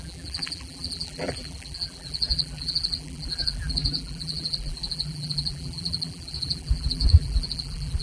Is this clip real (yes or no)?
no